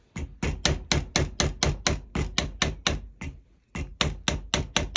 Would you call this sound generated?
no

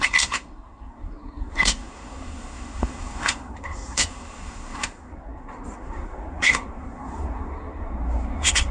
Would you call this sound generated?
yes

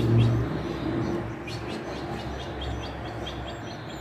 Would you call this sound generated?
no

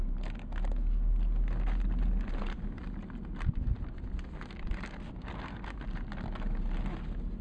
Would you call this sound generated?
no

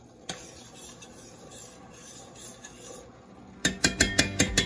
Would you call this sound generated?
no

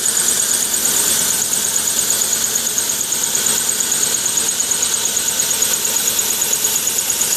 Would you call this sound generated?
no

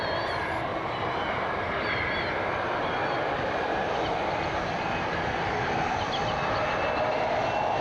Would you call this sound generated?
no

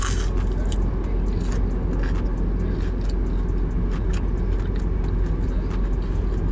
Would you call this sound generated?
no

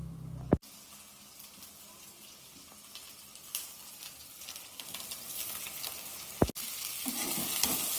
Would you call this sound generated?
no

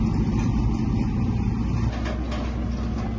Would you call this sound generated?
no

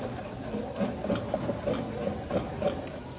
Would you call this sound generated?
no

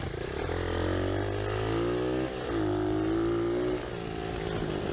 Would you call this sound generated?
no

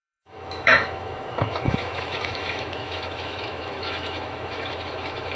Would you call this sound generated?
yes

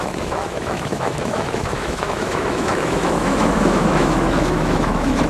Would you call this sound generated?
yes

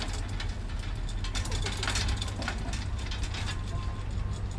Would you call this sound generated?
no